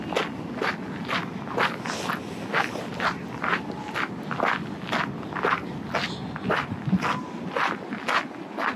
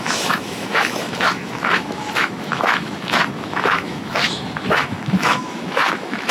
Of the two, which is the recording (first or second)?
first